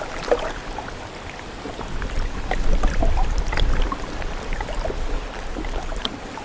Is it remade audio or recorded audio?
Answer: remade